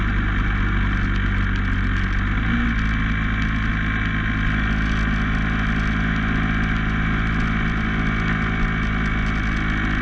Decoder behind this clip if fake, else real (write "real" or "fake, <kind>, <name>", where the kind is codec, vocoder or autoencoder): real